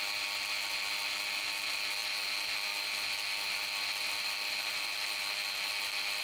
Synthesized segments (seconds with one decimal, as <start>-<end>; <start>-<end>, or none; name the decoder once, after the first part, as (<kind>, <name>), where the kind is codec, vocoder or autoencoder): none